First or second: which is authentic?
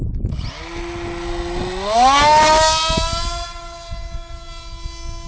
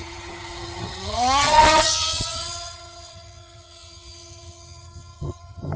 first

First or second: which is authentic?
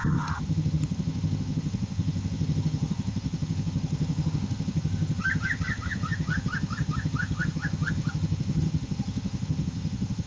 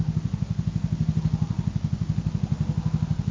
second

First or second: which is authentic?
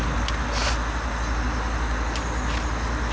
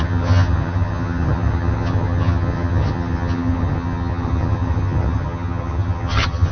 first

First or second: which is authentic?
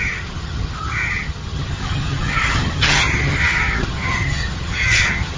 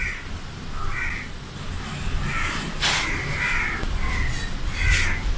second